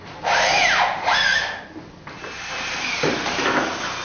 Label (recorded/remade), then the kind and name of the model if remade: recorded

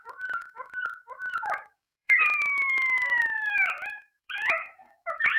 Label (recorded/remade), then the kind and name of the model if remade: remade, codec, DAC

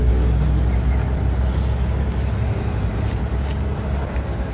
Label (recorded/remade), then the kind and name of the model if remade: recorded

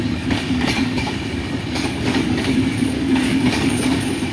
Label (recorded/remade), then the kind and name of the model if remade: remade, codec, DAC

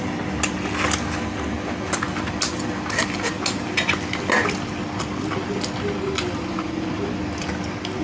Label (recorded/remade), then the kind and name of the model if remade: recorded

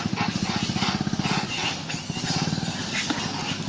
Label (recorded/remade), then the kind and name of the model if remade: recorded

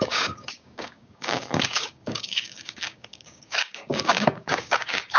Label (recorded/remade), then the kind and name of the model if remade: remade, codec, DAC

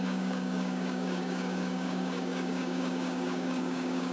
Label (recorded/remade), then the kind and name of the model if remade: remade, codec, DAC